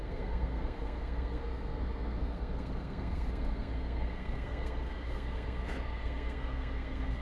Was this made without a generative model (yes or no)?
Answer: no